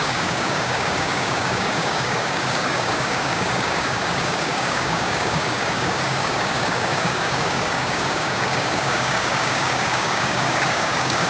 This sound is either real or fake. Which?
fake